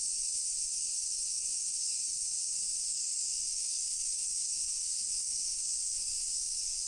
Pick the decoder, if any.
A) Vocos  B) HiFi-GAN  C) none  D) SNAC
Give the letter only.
D